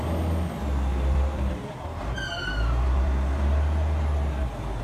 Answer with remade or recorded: recorded